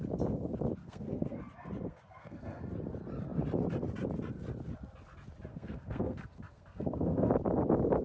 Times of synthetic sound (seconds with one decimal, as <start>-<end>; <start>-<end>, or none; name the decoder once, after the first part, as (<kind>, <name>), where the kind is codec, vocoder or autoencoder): 0.8-1.4 (codec, SNAC); 1.9-2.6; 5.5-7.3